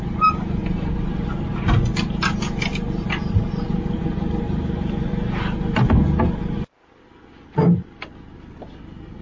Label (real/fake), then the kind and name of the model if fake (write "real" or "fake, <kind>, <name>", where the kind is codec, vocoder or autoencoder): real